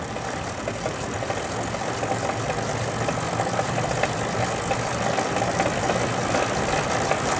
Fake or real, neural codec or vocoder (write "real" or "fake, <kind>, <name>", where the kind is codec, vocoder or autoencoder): real